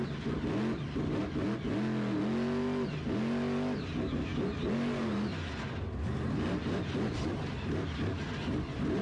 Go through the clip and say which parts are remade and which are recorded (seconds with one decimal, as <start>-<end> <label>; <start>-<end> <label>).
0.0-9.0 recorded